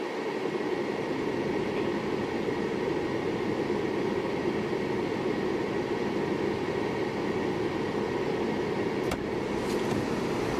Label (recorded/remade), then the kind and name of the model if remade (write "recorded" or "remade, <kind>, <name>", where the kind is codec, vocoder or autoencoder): recorded